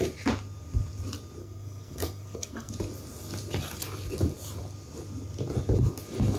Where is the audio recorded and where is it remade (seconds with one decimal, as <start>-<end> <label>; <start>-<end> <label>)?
0.0-1.4 recorded; 1.4-2.7 remade; 2.7-6.4 recorded